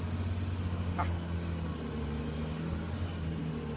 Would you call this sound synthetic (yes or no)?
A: no